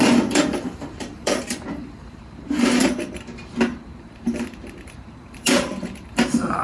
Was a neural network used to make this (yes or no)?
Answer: yes